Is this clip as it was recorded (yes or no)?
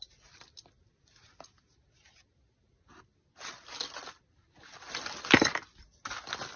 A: yes